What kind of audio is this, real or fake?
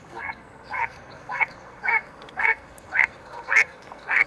fake